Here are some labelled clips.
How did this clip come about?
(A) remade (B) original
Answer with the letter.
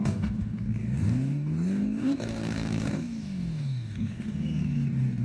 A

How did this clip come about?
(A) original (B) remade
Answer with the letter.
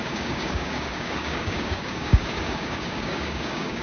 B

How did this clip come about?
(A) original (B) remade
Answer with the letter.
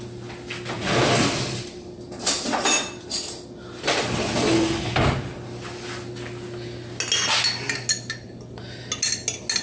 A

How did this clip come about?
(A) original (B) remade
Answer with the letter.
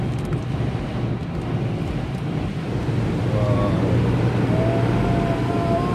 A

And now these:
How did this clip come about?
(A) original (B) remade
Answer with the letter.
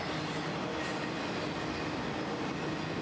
A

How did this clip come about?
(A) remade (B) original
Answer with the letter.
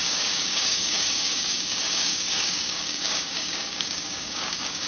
A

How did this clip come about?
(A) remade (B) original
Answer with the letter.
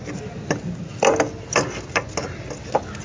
B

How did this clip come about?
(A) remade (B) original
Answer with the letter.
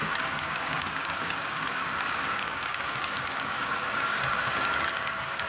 A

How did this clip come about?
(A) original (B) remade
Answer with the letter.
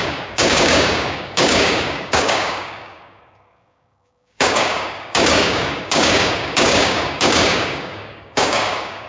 B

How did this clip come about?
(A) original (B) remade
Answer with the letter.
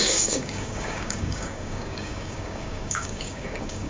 B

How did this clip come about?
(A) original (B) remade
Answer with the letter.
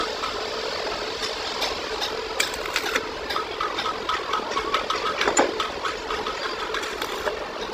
A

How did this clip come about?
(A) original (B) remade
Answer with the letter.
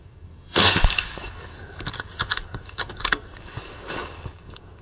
B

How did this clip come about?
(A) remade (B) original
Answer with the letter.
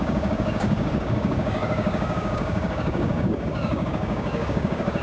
A